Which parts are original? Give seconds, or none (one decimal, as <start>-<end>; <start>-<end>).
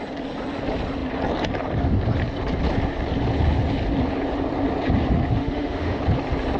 0.0-5.4; 6.0-6.6